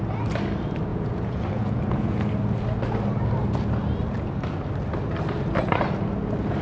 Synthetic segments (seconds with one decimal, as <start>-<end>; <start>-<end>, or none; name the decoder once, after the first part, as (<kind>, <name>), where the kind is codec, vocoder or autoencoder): 0.9-2.3 (vocoder, Vocos)